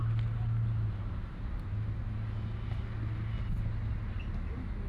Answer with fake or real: real